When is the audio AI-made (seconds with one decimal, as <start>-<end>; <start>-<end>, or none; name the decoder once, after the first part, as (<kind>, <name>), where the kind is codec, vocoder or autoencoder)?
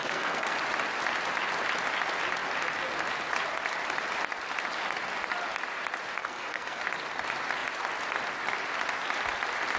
0.0-0.6 (codec, SNAC); 6.2-6.8